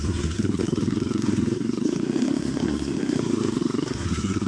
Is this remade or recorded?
remade